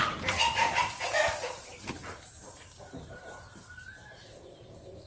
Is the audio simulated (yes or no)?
yes